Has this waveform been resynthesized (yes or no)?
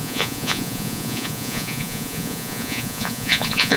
yes